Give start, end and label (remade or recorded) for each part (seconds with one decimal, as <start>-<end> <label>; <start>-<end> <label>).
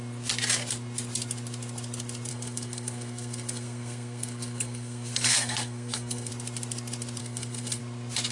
0.0-2.3 recorded; 2.3-6.3 remade; 6.3-7.2 recorded; 7.2-7.8 remade; 7.8-8.3 recorded